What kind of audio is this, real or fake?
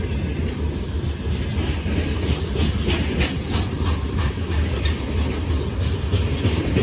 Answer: real